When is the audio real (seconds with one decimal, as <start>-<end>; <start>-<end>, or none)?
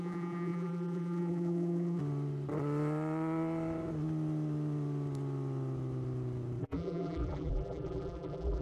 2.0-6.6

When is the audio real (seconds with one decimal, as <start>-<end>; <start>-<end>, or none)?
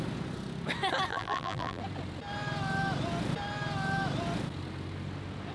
0.0-1.1; 1.8-5.5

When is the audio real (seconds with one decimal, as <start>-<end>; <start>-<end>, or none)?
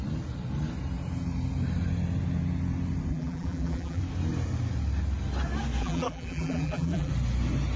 0.0-3.1; 4.0-5.8; 7.1-7.8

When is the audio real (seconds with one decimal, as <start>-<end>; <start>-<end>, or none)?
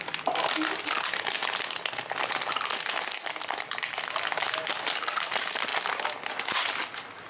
5.7-6.7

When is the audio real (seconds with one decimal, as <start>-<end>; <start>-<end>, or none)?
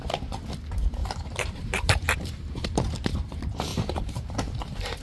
0.0-1.0; 2.8-3.7; 4.6-5.0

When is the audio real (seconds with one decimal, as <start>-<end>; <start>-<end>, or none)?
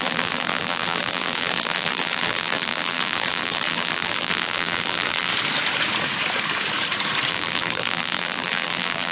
5.3-7.3